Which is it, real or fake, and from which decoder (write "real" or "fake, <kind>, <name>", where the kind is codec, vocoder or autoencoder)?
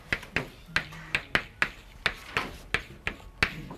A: real